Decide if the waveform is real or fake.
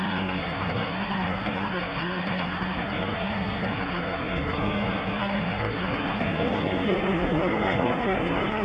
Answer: fake